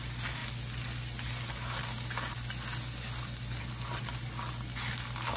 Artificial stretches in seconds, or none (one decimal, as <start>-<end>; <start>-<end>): none